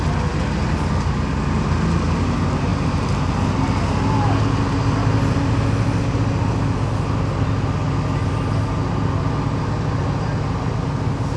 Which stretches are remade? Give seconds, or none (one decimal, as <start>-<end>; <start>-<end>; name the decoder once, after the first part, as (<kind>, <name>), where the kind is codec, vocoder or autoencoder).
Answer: none

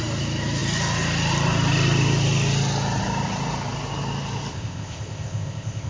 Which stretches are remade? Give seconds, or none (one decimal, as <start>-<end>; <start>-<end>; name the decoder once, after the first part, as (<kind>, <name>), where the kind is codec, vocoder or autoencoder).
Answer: 4.5-5.9 (codec, ZipCodec)

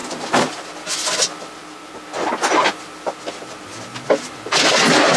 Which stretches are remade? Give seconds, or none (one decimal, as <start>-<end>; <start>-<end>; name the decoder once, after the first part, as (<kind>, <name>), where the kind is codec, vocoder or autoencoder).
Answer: none